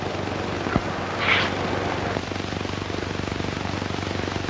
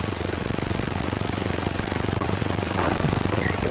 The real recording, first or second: first